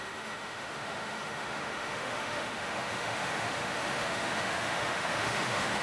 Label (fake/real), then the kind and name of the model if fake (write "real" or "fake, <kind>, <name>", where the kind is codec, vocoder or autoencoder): fake, autoencoder, DAC-VAE